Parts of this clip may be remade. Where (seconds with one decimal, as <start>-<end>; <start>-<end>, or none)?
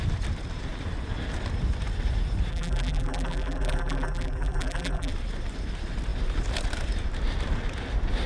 2.5-5.1